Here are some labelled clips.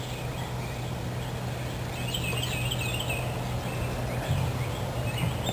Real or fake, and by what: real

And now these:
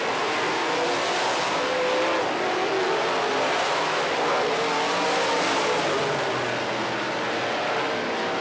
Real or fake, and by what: real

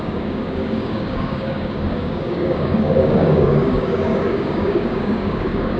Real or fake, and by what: fake, codec, DAC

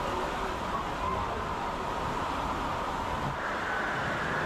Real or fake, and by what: real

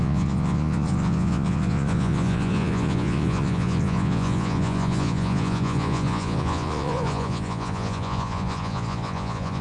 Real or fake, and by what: fake, vocoder, Vocos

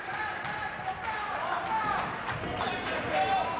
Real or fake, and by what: real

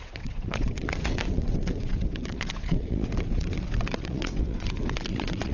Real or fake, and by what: fake, vocoder, WaveNeXt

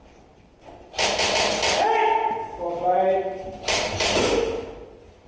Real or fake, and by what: real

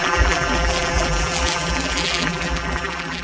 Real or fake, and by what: fake, vocoder, BigVGAN v2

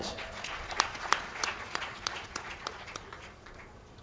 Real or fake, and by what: fake, vocoder, Vocos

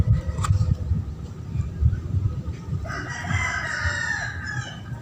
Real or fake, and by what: real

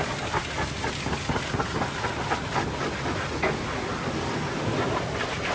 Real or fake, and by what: real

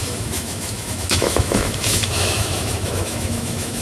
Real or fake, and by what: fake, autoencoder, DAC-VAE